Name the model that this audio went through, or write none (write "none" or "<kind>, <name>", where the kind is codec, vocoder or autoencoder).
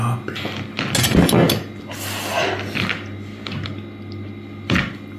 none